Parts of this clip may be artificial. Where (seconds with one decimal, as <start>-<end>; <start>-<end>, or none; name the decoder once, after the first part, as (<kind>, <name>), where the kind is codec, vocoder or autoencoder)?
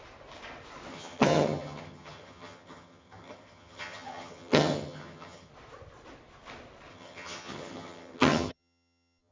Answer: 0.9-5.5 (vocoder, HiFi-GAN); 6.9-9.3